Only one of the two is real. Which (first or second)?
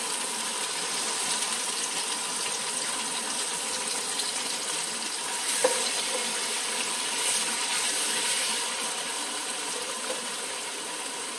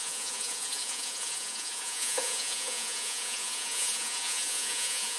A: first